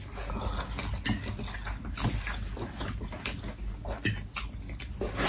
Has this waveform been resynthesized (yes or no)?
no